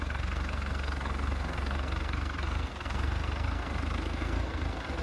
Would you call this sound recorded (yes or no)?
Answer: no